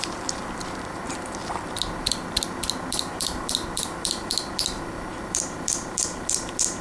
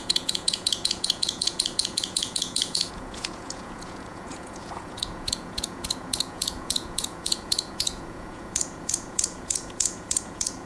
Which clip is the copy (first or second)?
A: second